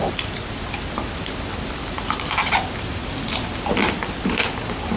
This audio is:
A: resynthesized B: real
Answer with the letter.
A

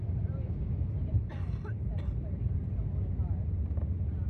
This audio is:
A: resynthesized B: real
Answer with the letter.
B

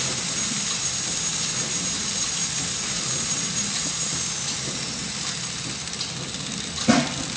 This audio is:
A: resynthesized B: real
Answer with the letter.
B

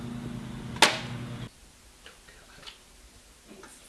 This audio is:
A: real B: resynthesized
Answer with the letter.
A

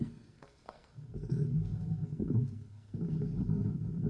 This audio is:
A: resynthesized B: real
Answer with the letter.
A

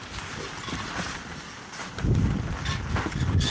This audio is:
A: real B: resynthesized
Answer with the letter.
A